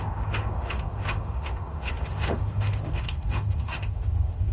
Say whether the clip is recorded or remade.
remade